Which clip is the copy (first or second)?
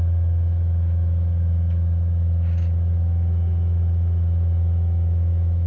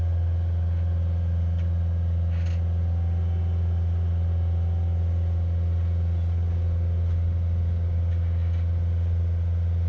first